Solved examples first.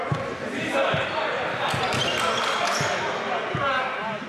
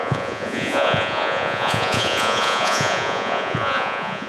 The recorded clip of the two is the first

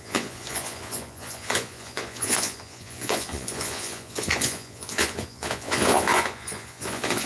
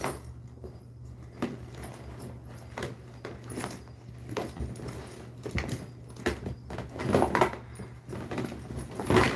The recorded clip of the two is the second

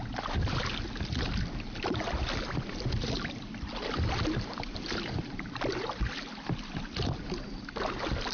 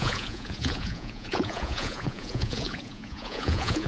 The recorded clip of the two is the first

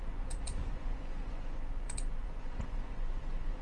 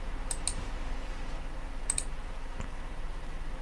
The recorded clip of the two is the second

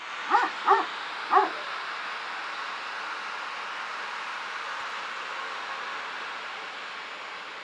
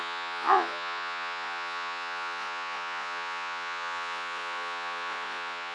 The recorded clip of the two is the first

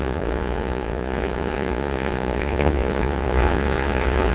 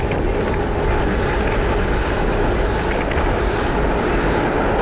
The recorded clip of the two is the second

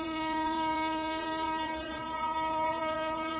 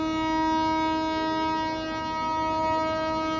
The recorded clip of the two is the second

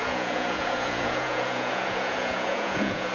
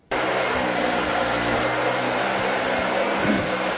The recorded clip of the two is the second